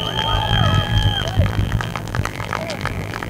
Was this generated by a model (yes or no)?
yes